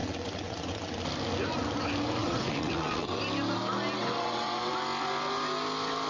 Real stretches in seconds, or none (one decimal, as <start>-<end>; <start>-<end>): 0.9-2.2; 3.2-4.0; 4.7-6.1